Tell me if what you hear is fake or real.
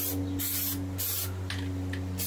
real